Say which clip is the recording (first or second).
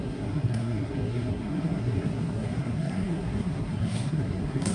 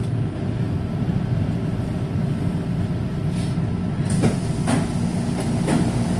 second